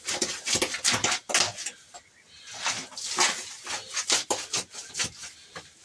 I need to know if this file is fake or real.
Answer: real